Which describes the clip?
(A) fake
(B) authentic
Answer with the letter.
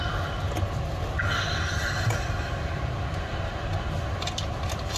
B